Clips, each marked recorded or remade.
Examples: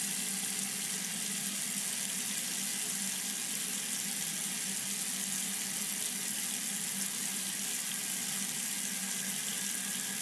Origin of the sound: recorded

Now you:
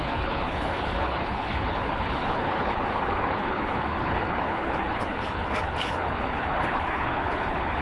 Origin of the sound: remade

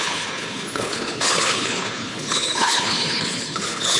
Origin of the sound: remade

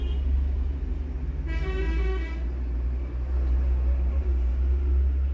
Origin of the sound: recorded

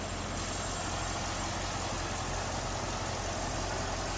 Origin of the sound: recorded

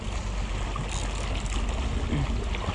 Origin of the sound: recorded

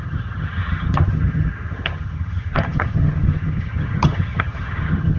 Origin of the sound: remade